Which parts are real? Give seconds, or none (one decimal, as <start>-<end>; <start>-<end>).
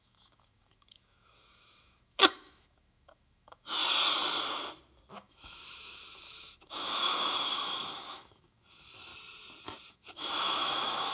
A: 3.8-5.1; 9.1-9.9